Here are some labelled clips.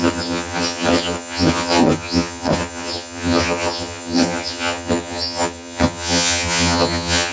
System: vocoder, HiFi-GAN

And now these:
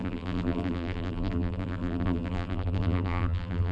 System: vocoder, BigVGAN v2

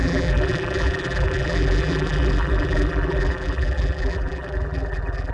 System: vocoder, BigVGAN v2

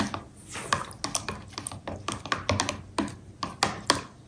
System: none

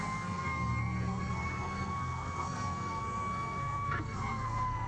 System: codec, SNAC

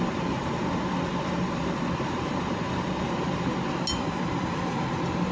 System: none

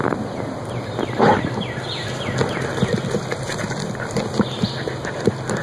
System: none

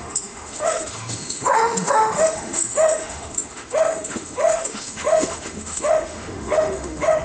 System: autoencoder, DAC-VAE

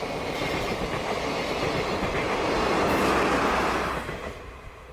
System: none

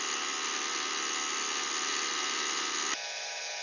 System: none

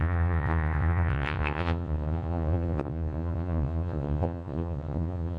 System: vocoder, Vocos